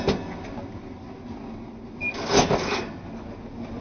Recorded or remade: recorded